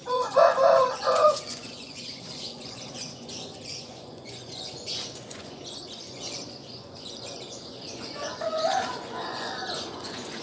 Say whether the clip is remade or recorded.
remade